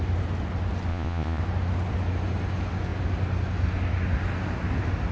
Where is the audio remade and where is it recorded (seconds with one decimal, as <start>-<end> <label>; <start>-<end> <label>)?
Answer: 0.0-0.9 recorded; 0.9-1.4 remade; 1.4-5.1 recorded